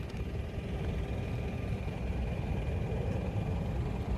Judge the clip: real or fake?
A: real